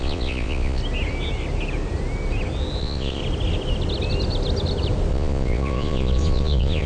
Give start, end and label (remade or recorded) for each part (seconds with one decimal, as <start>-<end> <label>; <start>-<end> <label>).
0.0-0.8 remade; 0.8-2.8 recorded; 2.8-3.2 remade; 3.2-5.1 recorded; 5.1-6.9 remade